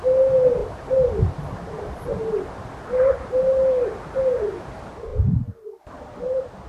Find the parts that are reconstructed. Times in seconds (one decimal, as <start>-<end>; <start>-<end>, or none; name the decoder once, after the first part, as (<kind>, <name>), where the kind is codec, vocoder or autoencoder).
none

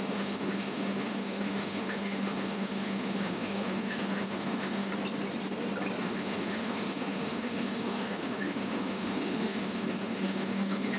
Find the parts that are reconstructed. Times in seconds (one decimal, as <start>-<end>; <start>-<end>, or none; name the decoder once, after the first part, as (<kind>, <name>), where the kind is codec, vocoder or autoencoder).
0.0-4.9 (autoencoder, DAC-VAE); 6.0-11.0

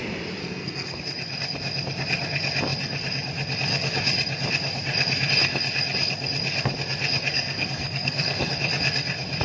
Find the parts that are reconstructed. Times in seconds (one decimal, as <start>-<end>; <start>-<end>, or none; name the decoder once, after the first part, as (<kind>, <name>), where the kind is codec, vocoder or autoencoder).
0.4-1.0 (codec, SNAC); 7.3-8.5

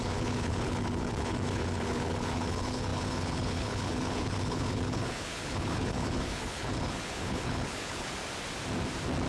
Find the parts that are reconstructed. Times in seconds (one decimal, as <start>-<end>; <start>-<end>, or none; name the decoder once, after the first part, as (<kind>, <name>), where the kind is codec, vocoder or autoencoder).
0.0-8.2 (codec, HILCodec)

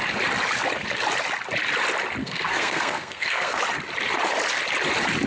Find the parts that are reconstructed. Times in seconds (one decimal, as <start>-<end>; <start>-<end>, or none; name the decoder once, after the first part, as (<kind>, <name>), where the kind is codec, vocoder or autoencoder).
2.2-3.6 (codec, SNAC)